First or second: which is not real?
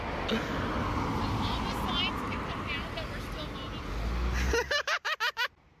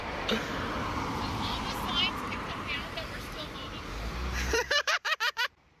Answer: second